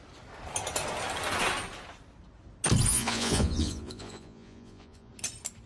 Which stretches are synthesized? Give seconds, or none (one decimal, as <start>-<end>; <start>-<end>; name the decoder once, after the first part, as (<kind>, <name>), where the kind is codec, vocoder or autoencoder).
2.9-5.1 (vocoder, Vocos)